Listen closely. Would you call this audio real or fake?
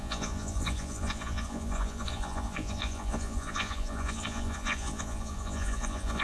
fake